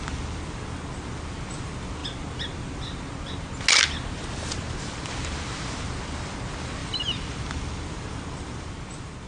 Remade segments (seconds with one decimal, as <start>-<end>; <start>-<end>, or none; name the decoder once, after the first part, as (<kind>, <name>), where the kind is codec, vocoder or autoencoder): 6.8-8.7 (vocoder, BigVGAN v2)